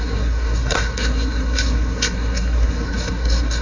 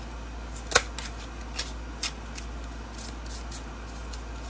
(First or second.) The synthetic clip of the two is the first